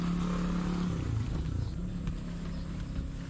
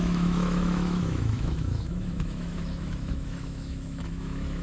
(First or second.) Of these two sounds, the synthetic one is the second